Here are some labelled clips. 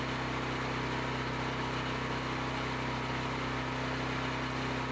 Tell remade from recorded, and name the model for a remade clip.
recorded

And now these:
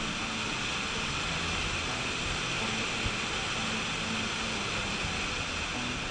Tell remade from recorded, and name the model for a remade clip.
recorded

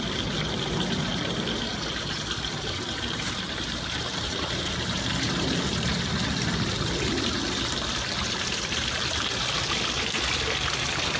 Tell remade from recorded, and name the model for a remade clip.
recorded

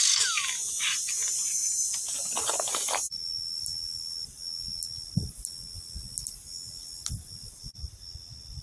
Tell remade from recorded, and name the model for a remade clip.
recorded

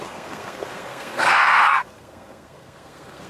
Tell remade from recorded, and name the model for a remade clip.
remade, codec, SNAC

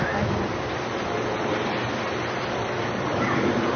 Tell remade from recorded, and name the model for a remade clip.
recorded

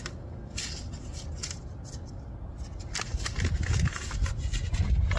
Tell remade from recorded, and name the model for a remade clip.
recorded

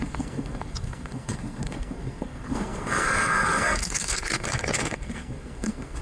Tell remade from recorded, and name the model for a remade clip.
remade, codec, SNAC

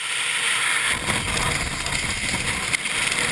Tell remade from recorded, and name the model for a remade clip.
recorded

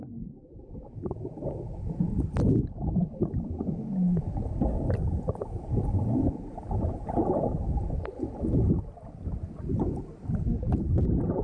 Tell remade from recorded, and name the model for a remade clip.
recorded